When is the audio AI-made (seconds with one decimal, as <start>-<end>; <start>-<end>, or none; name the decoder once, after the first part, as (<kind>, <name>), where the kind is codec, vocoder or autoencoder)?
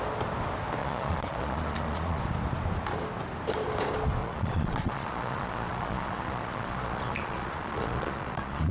0.8-2.2 (vocoder, Vocos); 4.2-8.7